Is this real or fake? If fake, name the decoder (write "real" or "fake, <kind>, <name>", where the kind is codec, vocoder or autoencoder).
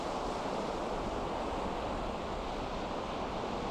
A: real